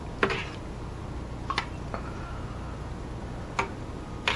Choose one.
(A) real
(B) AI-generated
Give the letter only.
A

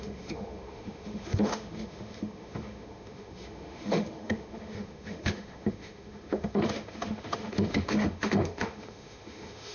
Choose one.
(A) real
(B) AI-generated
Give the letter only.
B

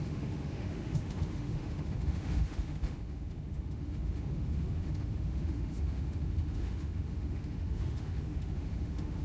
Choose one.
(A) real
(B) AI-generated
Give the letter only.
B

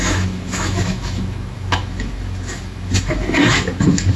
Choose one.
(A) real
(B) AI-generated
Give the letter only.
B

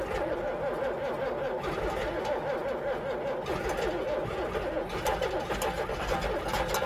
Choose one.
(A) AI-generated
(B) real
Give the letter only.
B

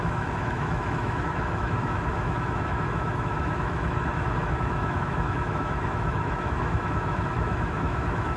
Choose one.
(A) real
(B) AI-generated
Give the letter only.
B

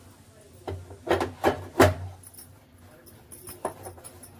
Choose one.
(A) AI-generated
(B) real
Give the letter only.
B